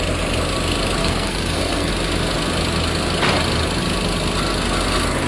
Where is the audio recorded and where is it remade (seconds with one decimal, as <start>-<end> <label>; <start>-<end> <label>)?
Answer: 0.0-1.0 recorded; 1.0-1.9 remade; 1.9-5.3 recorded